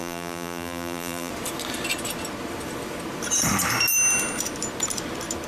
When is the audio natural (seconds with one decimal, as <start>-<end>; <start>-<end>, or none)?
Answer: 1.3-5.5